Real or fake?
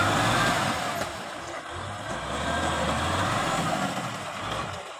real